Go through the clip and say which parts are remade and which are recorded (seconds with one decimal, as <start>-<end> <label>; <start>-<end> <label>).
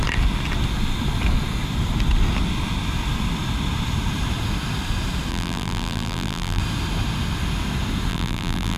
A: 0.0-5.3 recorded; 5.3-6.6 remade; 6.6-8.1 recorded; 8.1-8.8 remade